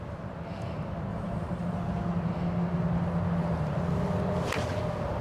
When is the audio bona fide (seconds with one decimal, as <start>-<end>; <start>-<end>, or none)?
0.0-1.1; 1.9-5.2